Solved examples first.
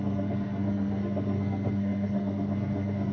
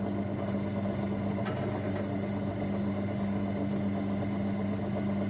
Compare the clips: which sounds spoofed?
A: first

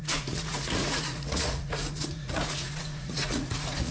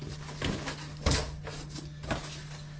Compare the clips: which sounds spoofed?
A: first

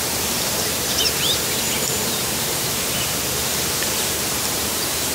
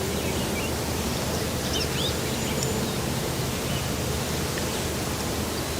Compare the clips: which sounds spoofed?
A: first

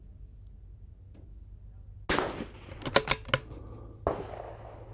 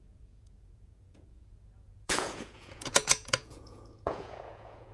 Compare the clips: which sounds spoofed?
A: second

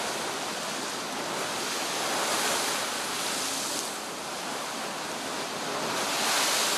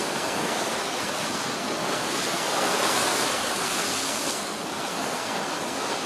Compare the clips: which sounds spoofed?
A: second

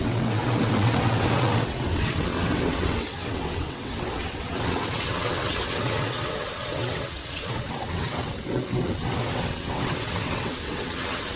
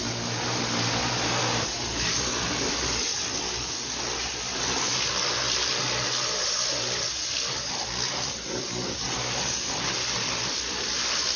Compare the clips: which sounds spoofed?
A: first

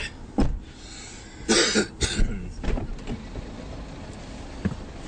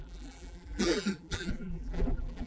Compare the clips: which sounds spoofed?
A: second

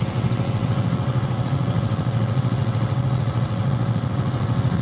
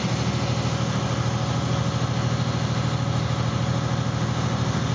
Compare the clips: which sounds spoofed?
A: first